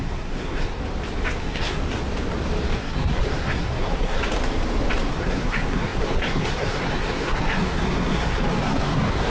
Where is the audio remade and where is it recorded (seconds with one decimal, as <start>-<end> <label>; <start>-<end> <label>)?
0.0-0.8 remade; 0.8-1.4 recorded; 1.4-1.8 remade; 1.8-2.8 recorded; 2.8-4.2 remade; 4.2-5.1 recorded; 5.1-9.3 remade

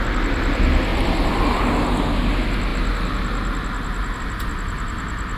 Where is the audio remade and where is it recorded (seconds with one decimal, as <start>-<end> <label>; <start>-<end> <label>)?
0.0-5.4 recorded

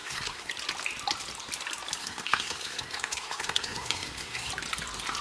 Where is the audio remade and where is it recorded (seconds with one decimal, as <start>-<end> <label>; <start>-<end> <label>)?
0.0-0.5 remade; 0.5-2.0 recorded; 2.0-4.5 remade; 4.5-5.2 recorded

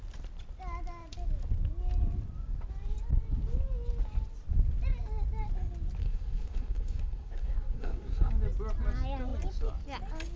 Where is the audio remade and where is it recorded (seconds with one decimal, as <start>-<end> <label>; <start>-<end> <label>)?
0.0-6.0 recorded; 6.0-8.3 remade; 8.3-10.4 recorded

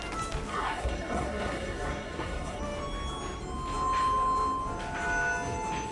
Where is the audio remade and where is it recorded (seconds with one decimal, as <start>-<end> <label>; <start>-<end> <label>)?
0.0-0.5 recorded; 0.5-2.6 remade; 2.6-5.9 recorded